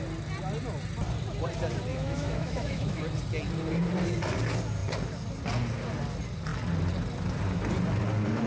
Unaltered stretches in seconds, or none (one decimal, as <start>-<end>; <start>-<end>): 0.0-1.9; 3.0-8.5